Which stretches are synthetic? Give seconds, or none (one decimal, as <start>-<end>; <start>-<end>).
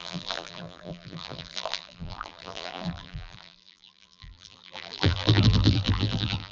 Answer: 0.0-6.5